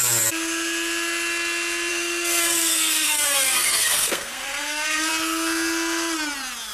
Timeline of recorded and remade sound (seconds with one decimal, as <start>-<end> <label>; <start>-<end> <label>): 0.0-1.9 recorded; 1.9-5.1 remade; 5.1-6.7 recorded